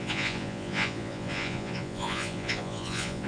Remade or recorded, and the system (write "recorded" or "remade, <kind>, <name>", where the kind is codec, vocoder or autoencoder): remade, vocoder, Vocos